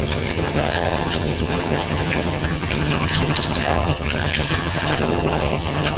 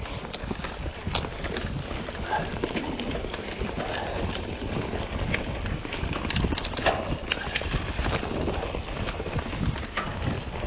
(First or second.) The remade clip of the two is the first